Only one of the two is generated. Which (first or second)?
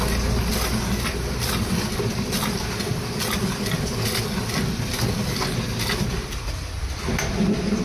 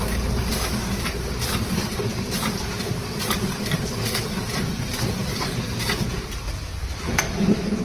second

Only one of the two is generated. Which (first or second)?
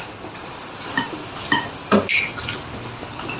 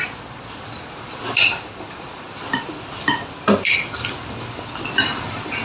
second